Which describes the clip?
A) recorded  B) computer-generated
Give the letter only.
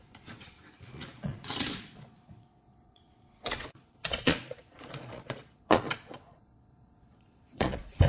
B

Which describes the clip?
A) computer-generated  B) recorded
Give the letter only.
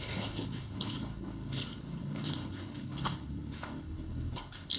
A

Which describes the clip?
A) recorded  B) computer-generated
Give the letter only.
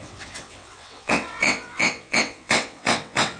B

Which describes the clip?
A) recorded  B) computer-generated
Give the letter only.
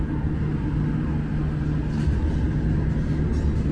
A